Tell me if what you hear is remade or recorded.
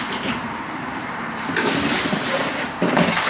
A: remade